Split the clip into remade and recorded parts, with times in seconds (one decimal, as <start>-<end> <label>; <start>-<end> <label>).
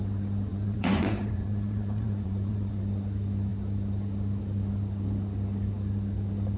0.0-0.5 recorded; 0.5-2.8 remade; 2.8-6.6 recorded